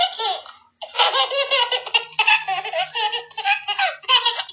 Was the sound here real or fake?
real